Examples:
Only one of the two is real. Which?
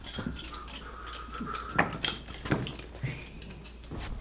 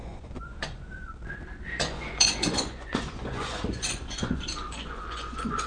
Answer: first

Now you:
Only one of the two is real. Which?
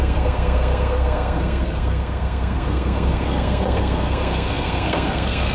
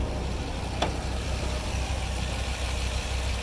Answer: second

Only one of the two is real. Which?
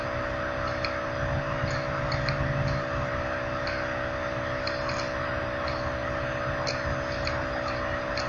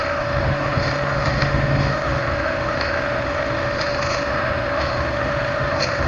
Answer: first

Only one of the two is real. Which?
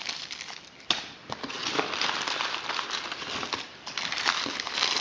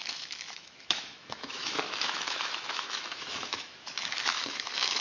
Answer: first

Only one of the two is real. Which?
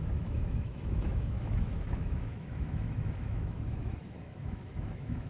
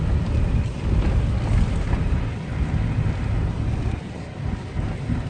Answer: second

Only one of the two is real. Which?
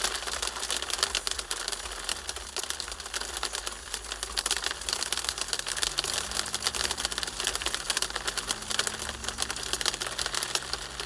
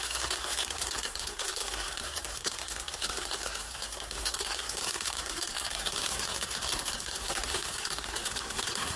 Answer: first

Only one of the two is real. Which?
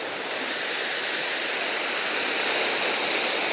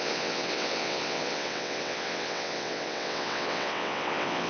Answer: first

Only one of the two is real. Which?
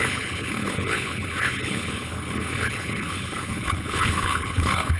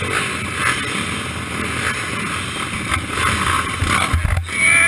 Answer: second